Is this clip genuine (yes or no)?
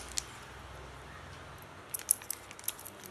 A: yes